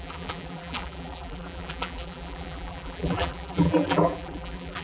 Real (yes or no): no